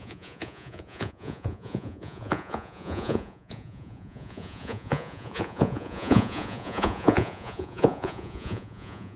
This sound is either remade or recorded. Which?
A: remade